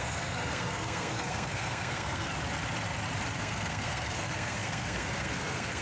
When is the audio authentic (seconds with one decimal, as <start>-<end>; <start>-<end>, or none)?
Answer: 2.3-3.4